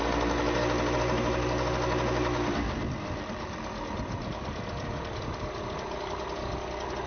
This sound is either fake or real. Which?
real